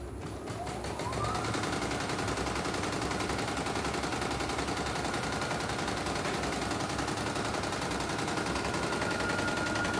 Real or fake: real